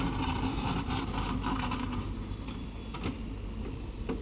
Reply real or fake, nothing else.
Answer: real